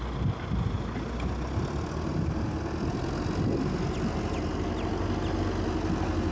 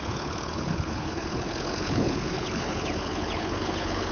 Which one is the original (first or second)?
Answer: first